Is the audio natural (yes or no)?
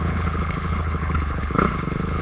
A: no